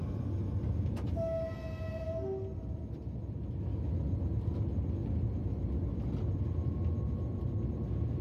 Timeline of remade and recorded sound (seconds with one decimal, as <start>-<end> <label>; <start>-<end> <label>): 0.0-8.2 recorded